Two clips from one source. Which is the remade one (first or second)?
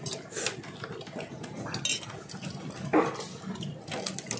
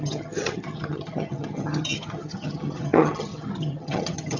second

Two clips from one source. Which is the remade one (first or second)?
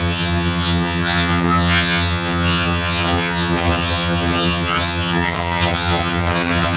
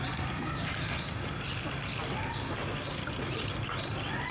first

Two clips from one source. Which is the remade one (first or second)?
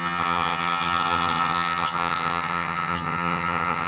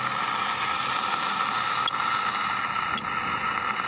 first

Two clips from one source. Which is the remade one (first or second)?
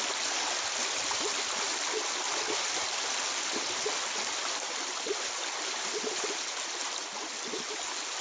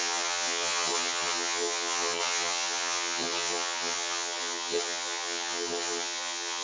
second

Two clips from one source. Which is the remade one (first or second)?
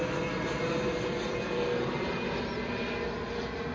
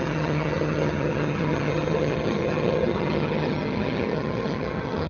second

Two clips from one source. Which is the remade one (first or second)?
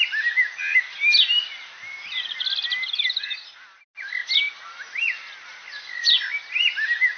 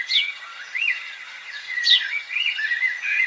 second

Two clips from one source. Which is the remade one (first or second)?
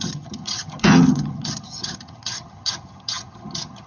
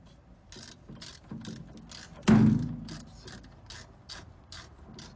first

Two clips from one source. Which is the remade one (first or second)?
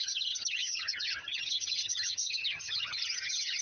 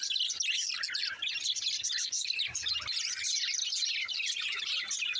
first